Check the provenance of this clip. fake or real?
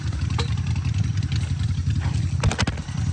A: real